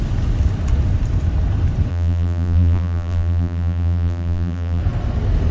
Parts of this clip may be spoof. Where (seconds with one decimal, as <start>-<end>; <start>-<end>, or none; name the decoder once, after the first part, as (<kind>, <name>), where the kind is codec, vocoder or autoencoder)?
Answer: 1.9-4.8 (vocoder, BigVGAN v2)